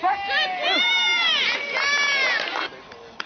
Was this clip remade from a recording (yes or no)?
no